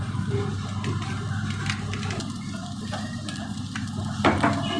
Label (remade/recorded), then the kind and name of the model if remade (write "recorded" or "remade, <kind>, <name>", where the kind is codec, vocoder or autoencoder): recorded